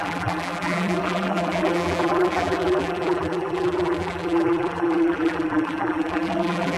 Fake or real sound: fake